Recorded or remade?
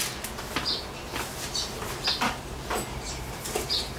recorded